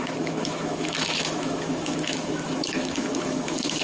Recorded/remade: remade